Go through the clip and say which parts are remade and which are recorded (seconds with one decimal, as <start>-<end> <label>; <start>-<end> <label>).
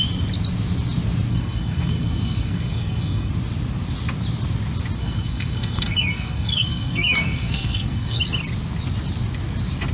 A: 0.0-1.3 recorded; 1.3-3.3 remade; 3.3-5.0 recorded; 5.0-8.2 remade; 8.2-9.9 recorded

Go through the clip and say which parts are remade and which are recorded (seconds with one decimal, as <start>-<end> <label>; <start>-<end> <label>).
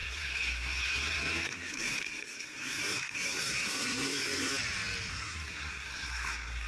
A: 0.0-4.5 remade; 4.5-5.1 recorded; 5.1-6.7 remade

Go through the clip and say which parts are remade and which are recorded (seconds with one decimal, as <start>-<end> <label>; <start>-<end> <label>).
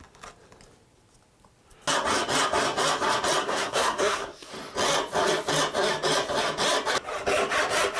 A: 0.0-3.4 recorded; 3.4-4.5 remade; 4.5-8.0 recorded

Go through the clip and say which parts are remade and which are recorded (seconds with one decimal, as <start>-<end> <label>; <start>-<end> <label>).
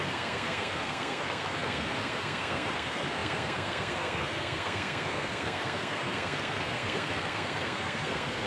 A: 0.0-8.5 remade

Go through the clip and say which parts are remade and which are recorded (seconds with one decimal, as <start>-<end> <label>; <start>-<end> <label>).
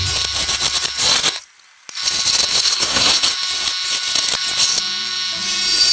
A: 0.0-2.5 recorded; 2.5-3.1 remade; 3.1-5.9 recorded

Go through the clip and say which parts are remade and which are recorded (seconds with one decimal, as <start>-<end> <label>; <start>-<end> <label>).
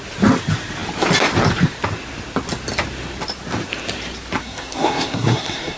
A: 0.0-4.4 recorded; 4.4-5.8 remade